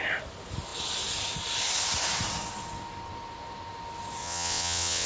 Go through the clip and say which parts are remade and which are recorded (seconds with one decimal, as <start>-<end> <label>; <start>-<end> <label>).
0.0-4.2 recorded; 4.2-5.1 remade